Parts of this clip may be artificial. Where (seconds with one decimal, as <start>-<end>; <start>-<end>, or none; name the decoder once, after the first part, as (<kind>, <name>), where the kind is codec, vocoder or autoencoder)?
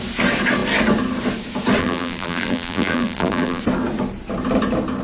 1.8-3.6 (vocoder, BigVGAN v2)